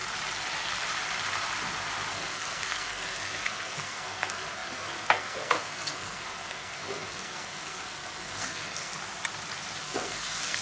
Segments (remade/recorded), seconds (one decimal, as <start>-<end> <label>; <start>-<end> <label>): 0.0-2.1 recorded; 2.1-8.9 remade; 8.9-9.8 recorded; 9.8-10.6 remade